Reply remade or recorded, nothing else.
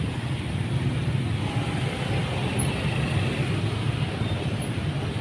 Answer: recorded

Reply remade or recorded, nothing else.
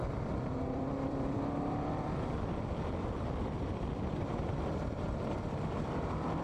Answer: remade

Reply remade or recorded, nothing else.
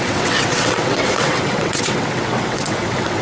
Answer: remade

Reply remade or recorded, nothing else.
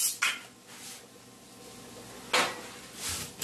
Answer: recorded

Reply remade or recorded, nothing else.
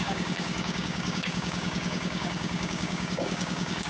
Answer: remade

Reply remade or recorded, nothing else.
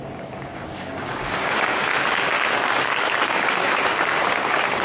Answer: remade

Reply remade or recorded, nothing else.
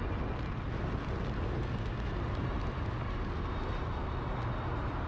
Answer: recorded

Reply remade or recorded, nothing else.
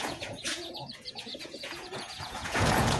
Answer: remade